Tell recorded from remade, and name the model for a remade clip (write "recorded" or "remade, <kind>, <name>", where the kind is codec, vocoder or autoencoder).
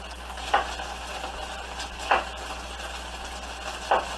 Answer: recorded